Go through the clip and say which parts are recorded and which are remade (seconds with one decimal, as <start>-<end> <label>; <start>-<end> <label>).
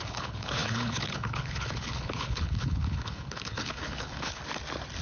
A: 0.0-4.4 remade; 4.4-5.0 recorded